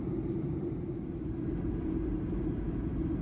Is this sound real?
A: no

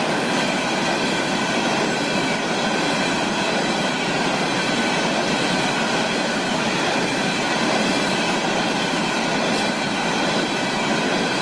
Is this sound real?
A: yes